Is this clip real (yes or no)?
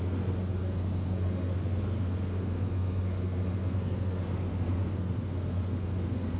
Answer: no